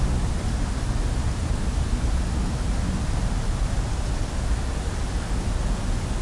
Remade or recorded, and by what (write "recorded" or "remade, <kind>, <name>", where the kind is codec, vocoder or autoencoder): recorded